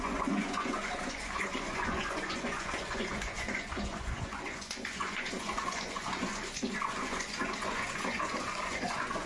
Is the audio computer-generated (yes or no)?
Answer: yes